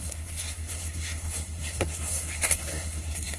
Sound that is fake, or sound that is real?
fake